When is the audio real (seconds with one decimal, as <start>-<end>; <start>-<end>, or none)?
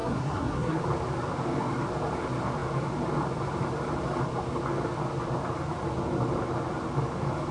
0.8-7.5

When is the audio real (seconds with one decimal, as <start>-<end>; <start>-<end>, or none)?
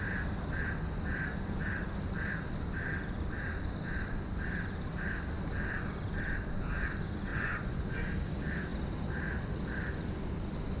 0.0-7.3; 8.1-10.8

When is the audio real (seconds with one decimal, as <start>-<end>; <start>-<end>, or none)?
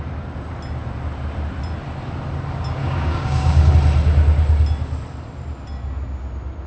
0.0-2.8; 3.7-6.7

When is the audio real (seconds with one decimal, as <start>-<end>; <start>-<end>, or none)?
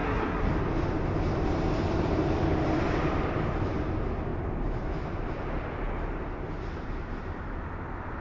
0.5-8.2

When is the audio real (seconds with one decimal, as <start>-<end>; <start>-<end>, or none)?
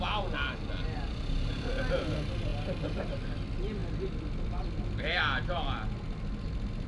0.0-6.9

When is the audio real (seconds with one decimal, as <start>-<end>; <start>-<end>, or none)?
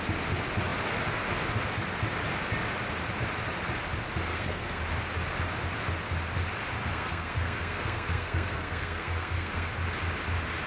0.0-4.3; 4.8-6.9; 9.7-10.7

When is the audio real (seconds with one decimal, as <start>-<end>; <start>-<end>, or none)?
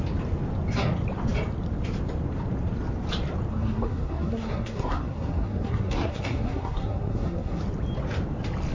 0.0-3.5; 7.6-8.7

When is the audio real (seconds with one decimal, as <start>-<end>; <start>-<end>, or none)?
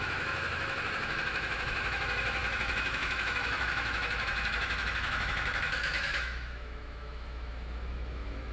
none